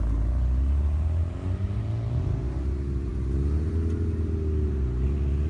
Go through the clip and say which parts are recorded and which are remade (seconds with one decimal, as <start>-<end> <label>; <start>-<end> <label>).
0.0-1.2 recorded; 1.2-1.8 remade; 1.8-5.5 recorded